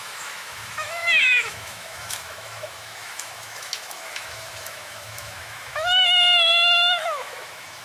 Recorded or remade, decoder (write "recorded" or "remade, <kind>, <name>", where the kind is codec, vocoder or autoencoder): remade, autoencoder, DAC-VAE